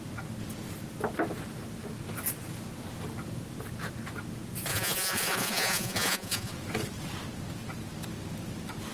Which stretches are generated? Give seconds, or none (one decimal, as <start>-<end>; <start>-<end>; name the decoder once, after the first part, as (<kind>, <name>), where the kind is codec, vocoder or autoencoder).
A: 4.7-6.5 (vocoder, Vocos)